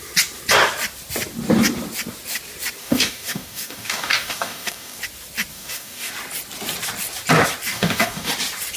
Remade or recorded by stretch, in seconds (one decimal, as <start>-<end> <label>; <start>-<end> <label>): 0.0-2.8 recorded; 2.8-5.0 remade; 5.0-5.5 recorded; 5.5-6.1 remade; 6.1-7.7 recorded; 7.7-8.3 remade; 8.3-8.8 recorded

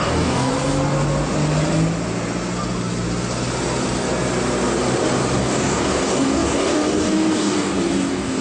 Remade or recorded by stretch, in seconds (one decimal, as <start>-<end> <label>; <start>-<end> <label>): 0.0-0.5 remade; 0.5-5.4 recorded; 5.4-8.4 remade

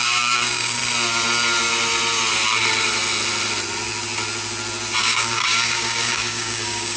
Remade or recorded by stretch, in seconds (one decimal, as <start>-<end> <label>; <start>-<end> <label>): 0.0-0.8 remade; 0.8-5.0 recorded; 5.0-7.0 remade

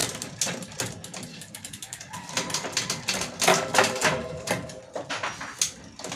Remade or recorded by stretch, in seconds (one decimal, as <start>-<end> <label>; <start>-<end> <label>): 0.0-1.3 recorded; 1.3-2.3 remade; 2.3-3.5 recorded; 3.5-4.8 remade; 4.8-6.2 recorded

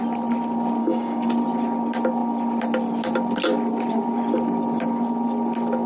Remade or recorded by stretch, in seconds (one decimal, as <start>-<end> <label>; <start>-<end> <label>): 0.0-0.8 recorded; 0.8-1.3 remade; 1.3-5.9 recorded

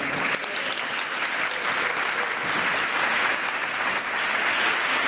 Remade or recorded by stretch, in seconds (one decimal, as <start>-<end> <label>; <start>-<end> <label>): 0.0-5.1 recorded